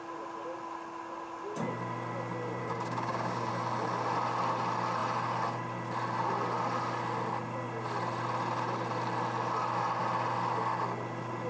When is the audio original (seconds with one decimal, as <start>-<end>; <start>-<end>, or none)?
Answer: 0.0-2.6; 3.5-11.5